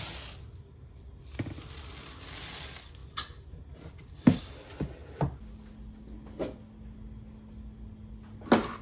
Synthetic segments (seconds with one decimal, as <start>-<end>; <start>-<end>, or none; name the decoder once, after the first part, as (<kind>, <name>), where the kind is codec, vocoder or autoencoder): none